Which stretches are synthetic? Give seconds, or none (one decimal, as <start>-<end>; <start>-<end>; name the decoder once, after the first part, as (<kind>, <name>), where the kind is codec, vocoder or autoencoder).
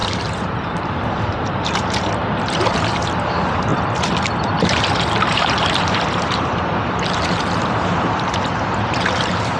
0.0-3.7 (vocoder, BigVGAN v2); 4.6-9.6